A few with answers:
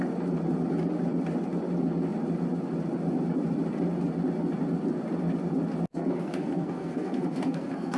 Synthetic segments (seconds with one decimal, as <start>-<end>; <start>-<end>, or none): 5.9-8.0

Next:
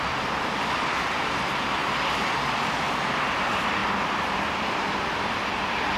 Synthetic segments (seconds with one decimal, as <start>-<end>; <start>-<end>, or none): none

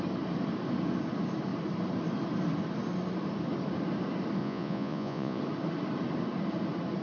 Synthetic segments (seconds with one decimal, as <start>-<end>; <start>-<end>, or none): 4.4-5.4

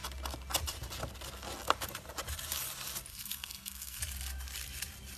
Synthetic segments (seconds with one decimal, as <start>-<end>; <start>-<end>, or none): 3.1-4.0